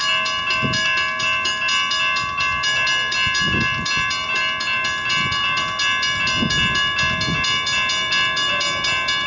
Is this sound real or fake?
real